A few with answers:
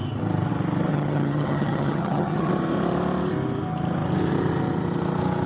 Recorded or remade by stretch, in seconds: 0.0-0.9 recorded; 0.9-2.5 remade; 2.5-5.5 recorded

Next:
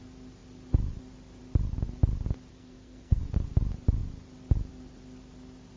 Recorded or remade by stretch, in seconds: 0.0-2.5 recorded; 2.5-3.2 remade; 3.2-5.8 recorded